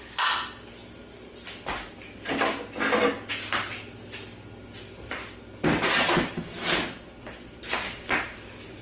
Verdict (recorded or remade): recorded